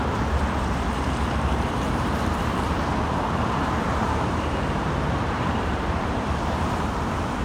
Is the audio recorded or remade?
remade